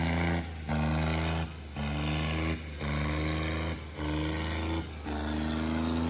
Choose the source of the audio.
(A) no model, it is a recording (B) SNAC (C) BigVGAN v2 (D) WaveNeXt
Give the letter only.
A